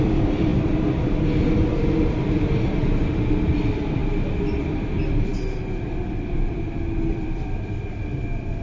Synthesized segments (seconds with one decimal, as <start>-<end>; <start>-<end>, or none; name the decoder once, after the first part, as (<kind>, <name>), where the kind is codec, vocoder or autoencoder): 0.0-0.5 (vocoder, BigVGAN v2); 2.1-4.0; 4.6-5.3; 6.0-8.6